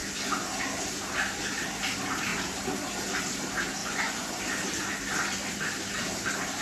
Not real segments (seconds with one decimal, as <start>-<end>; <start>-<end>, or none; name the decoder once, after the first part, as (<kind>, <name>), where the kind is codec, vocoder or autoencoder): 3.8-4.4 (vocoder, Vocos)